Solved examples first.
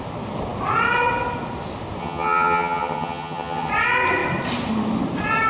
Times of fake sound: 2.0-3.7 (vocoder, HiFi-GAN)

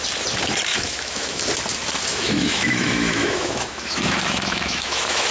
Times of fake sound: 0.7-1.4 (autoencoder, DAC-VAE); 2.1-5.3

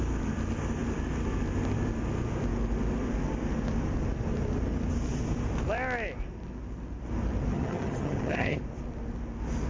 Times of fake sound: 7.5-8.6 (vocoder, HiFi-GAN)

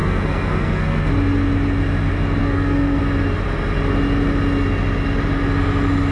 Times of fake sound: 0.0-1.1 (codec, SNAC); 2.4-3.0

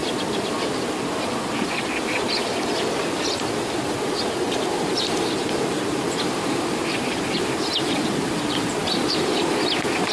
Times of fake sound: none

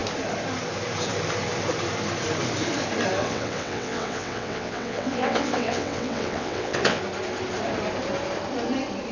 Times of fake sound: 3.2-7.0 (vocoder, WaveNeXt)

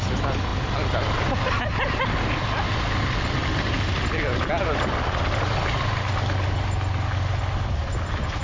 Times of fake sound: none